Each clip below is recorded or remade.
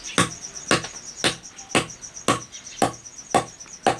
recorded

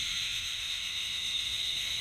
remade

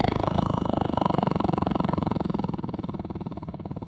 remade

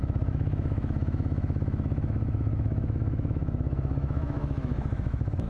remade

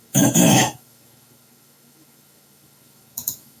remade